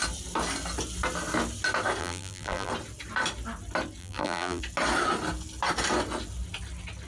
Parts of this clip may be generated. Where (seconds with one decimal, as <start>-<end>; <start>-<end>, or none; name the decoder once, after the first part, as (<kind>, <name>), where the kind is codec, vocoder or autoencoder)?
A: 2.0-2.7 (vocoder, BigVGAN v2); 4.0-4.6